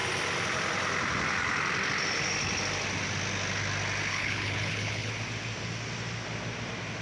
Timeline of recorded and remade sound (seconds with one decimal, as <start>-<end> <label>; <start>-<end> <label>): 0.0-4.1 recorded; 4.1-5.1 remade; 5.1-7.0 recorded